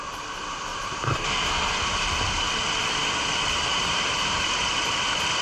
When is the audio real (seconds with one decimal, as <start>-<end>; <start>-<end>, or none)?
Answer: 0.0-0.7; 1.3-2.8; 4.9-5.4